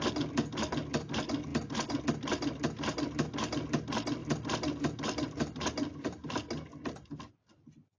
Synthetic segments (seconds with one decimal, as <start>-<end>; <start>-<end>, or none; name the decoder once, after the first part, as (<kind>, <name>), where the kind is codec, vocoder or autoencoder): none